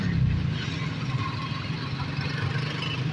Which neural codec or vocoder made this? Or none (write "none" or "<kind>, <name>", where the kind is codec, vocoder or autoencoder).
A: none